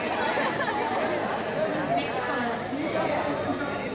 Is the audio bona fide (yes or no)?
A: yes